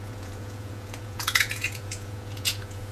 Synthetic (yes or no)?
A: yes